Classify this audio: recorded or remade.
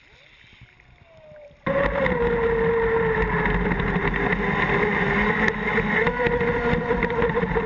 recorded